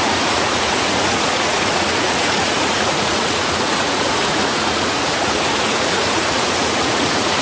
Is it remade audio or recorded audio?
remade